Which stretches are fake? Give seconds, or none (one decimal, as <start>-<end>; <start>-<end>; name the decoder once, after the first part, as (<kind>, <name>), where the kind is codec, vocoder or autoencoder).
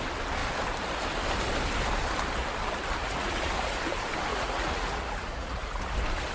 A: 3.0-3.5 (vocoder, Vocos); 4.3-5.8